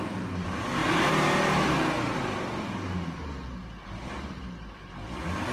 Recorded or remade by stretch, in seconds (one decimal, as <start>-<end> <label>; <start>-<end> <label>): 0.0-0.8 recorded; 0.8-1.4 remade; 1.4-5.5 recorded